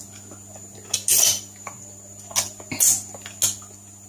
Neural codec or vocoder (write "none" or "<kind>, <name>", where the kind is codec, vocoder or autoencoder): none